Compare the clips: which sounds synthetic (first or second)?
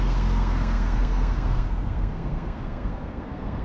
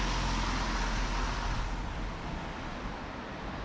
first